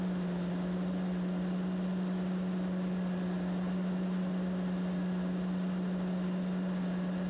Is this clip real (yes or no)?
yes